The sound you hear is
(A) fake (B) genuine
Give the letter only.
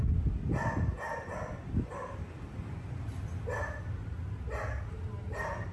B